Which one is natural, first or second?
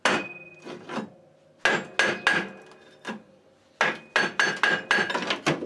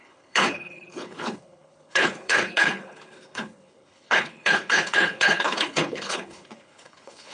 first